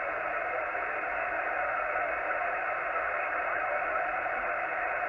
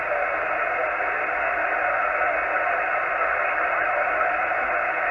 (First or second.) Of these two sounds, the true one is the second